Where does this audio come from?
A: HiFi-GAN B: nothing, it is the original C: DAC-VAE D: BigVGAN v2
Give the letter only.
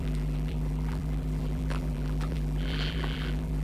D